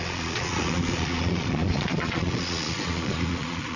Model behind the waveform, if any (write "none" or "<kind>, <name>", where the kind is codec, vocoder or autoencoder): vocoder, Vocos